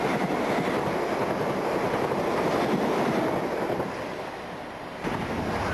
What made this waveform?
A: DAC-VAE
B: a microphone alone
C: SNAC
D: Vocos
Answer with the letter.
B